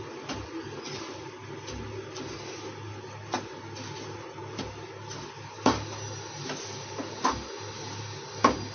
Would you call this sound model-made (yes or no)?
no